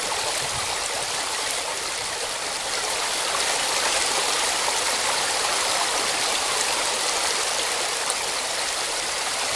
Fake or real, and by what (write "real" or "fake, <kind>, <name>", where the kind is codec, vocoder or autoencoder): fake, vocoder, BigVGAN v2